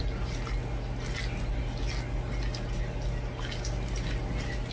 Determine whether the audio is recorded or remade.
recorded